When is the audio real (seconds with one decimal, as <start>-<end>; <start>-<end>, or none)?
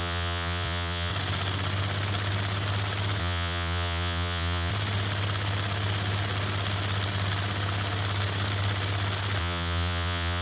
1.1-3.2; 4.7-9.4